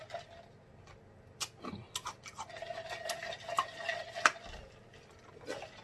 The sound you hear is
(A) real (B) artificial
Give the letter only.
A